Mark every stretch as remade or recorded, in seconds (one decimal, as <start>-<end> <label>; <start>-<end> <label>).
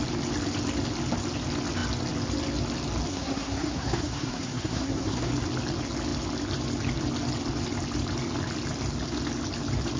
0.0-3.1 recorded; 3.1-5.3 remade; 5.3-10.0 recorded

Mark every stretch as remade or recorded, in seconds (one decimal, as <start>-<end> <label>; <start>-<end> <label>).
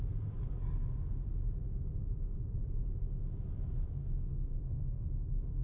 0.0-4.0 recorded; 4.0-5.6 remade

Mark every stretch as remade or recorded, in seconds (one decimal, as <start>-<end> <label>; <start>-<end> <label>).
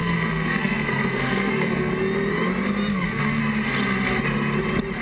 0.0-1.9 remade; 1.9-2.9 recorded; 2.9-3.4 remade; 3.4-5.0 recorded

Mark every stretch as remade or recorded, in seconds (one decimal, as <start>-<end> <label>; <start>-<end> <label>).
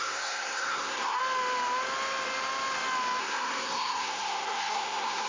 0.0-1.2 remade; 1.2-3.2 recorded; 3.2-5.3 remade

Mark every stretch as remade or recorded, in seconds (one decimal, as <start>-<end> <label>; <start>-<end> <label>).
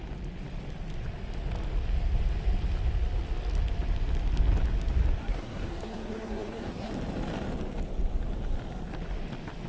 0.0-5.2 recorded; 5.2-6.9 remade; 6.9-9.7 recorded